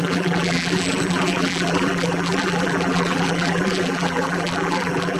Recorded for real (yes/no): no